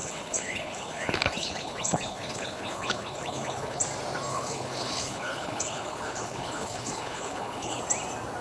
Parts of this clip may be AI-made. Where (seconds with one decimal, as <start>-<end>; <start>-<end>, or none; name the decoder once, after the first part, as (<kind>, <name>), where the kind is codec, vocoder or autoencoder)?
0.0-3.8 (codec, HILCodec); 4.3-7.8